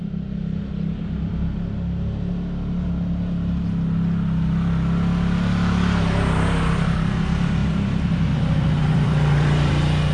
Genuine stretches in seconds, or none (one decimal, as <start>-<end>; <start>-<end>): 0.0-7.6; 9.7-10.1